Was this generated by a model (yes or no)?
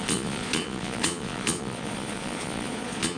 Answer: yes